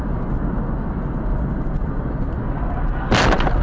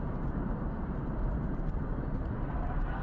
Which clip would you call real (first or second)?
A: first